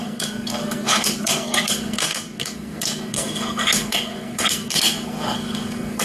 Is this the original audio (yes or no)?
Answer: no